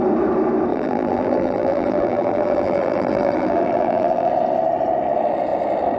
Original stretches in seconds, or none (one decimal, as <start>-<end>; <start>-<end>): 0.0-0.7; 4.3-6.0